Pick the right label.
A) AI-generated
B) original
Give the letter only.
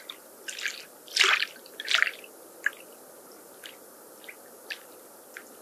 B